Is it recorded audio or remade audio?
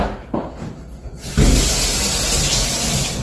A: recorded